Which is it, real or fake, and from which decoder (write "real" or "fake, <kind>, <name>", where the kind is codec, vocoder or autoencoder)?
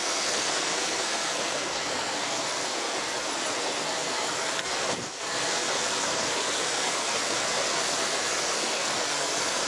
fake, codec, SNAC